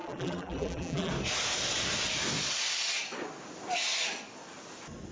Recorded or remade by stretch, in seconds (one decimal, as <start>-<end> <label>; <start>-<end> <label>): 0.0-1.1 remade; 1.1-5.1 recorded